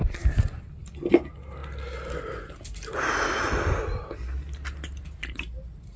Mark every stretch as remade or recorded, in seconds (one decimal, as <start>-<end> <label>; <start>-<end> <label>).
0.0-6.0 recorded

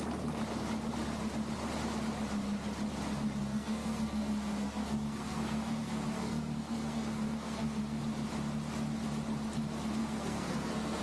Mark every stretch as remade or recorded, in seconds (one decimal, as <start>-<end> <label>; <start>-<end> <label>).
0.0-3.4 recorded; 3.4-8.0 remade; 8.0-10.0 recorded; 10.0-11.0 remade

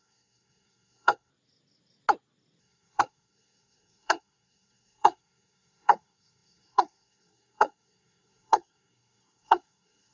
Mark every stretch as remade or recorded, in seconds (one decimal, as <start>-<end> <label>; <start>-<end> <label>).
0.0-1.3 remade; 1.3-2.6 recorded; 2.6-10.1 remade

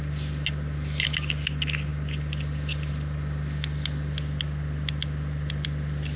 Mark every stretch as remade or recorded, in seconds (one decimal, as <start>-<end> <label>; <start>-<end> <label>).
0.0-6.2 recorded

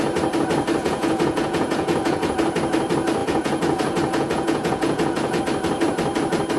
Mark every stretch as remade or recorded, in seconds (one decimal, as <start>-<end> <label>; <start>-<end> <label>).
0.0-0.8 recorded; 0.8-2.3 remade; 2.3-3.2 recorded; 3.2-5.4 remade; 5.4-6.6 recorded

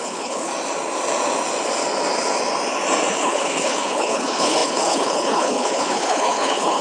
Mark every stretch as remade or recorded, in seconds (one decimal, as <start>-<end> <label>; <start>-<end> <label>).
0.0-0.5 remade; 0.5-3.1 recorded; 3.1-6.8 remade

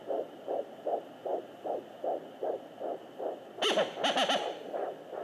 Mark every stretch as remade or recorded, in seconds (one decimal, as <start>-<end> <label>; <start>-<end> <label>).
0.0-5.2 recorded

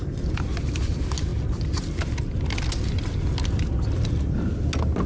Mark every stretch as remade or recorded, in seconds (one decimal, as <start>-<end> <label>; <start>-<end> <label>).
0.0-5.1 recorded